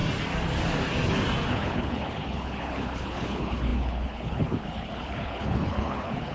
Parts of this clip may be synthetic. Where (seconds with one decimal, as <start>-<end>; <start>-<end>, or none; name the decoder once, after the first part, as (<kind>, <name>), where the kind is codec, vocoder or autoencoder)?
1.5-6.3 (codec, HILCodec)